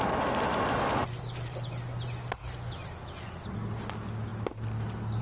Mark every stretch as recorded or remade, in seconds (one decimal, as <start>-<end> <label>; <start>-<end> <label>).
0.0-5.2 recorded